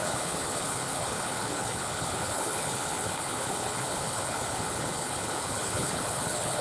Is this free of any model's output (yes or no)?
no